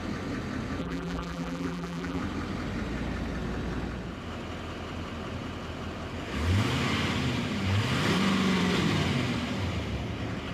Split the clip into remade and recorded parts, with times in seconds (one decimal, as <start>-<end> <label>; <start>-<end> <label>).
0.0-0.8 recorded; 0.8-2.2 remade; 2.2-10.5 recorded